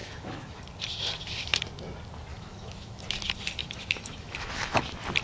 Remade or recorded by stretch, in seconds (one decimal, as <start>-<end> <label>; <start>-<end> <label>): 0.0-0.6 remade; 0.6-2.3 recorded; 2.3-3.0 remade; 3.0-3.6 recorded; 3.6-4.8 remade; 4.8-5.2 recorded

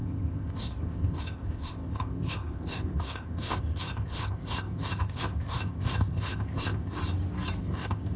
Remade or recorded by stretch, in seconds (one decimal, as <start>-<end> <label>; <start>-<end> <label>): 0.0-7.0 remade; 7.0-7.6 recorded; 7.6-8.2 remade